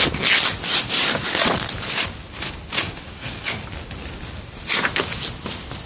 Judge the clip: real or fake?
real